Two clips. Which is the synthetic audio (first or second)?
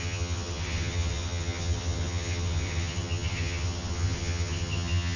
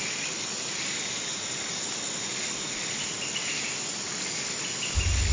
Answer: first